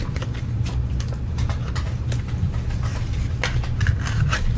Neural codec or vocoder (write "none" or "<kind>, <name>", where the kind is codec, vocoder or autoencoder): none